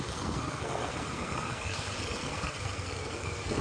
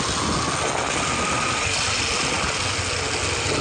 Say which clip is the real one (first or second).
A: second